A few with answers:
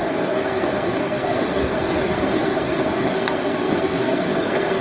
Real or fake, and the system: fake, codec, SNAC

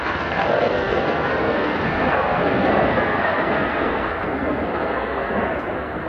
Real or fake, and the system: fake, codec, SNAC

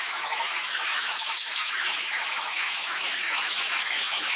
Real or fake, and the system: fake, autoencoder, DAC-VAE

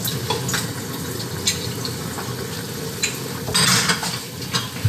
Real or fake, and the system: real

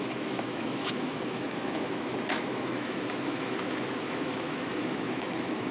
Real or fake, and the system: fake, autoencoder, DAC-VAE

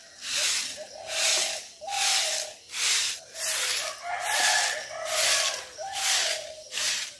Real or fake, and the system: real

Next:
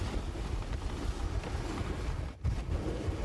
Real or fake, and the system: real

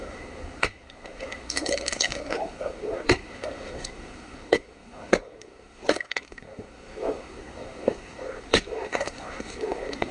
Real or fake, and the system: fake, codec, SNAC